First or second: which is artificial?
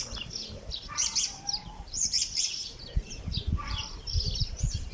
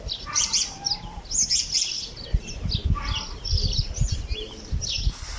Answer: first